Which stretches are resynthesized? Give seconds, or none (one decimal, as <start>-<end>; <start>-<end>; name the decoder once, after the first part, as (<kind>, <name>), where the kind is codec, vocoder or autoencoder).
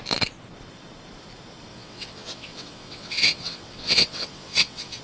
1.7-5.0 (vocoder, WaveNeXt)